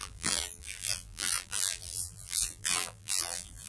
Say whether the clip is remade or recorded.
remade